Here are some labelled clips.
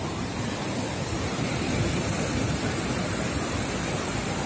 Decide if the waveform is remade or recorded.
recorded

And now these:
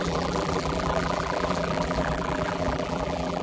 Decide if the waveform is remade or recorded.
remade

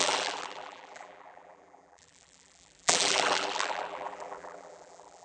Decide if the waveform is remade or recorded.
remade